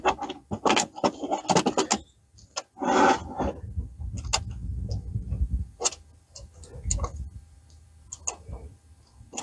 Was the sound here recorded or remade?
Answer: recorded